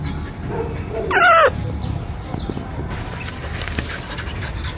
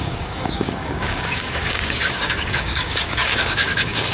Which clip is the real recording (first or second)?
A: first